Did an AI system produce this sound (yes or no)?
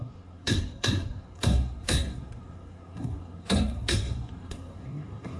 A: yes